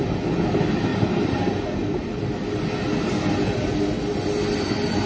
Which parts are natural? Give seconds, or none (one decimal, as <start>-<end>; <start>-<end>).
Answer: 0.0-5.1